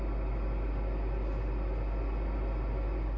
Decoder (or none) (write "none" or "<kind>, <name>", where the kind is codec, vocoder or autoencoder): none